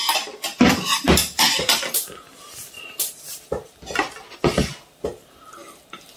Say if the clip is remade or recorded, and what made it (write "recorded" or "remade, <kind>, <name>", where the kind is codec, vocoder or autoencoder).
recorded